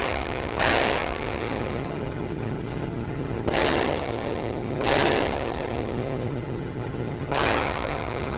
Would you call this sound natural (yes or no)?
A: no